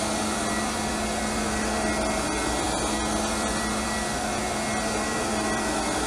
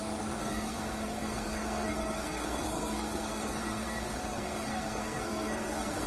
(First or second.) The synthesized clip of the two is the second